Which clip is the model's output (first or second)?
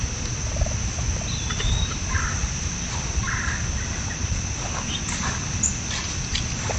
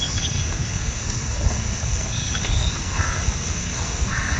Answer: second